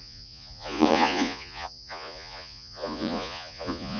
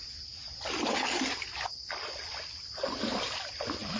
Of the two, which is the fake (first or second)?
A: first